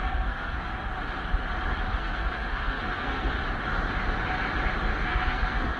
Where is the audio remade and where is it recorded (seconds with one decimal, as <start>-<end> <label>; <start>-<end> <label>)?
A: 0.0-0.9 remade; 0.9-1.9 recorded; 1.9-3.3 remade; 3.3-4.9 recorded; 4.9-5.8 remade